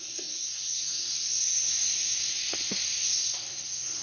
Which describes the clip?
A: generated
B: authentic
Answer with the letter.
A